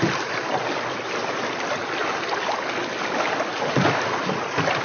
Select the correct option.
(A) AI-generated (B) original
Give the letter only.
B